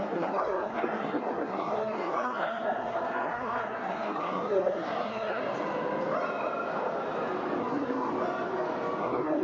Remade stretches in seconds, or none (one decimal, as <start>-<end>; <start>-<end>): 0.0-5.4; 7.6-8.1; 9.0-9.4